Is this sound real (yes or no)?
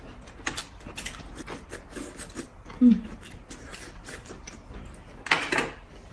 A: yes